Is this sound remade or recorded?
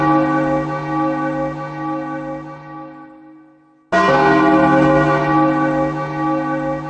recorded